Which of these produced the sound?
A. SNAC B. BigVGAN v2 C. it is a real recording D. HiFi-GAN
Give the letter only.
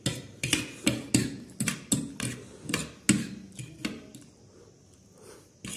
C